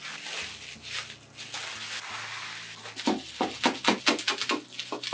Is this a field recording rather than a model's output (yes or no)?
yes